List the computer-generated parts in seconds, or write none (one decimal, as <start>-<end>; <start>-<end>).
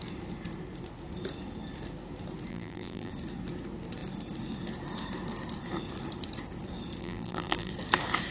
2.5-3.1; 7.0-7.7